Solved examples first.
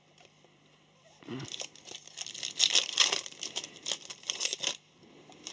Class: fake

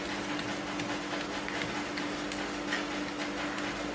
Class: real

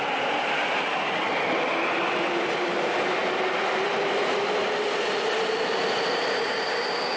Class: real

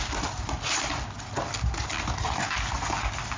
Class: real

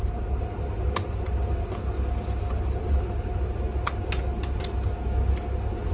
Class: real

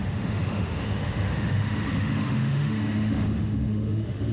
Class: fake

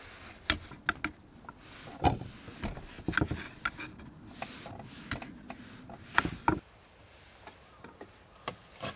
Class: real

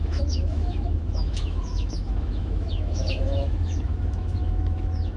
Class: fake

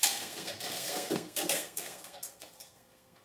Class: fake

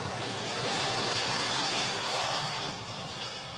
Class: fake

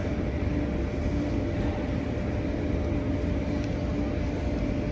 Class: real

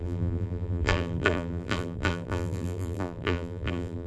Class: fake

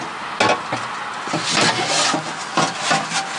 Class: real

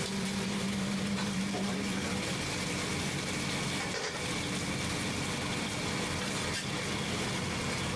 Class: real